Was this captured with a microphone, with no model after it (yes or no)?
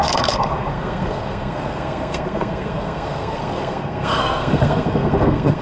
no